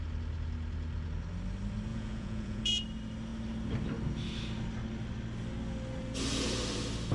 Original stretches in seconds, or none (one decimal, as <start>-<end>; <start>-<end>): 0.0-1.9; 2.6-7.1